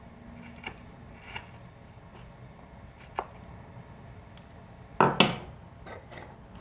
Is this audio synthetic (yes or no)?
no